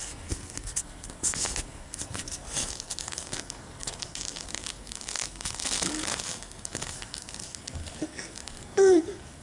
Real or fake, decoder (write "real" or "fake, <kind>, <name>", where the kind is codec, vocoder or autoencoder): fake, codec, SNAC